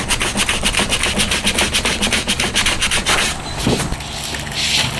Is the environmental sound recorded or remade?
recorded